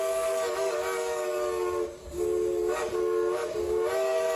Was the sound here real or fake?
fake